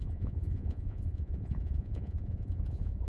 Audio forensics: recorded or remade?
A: remade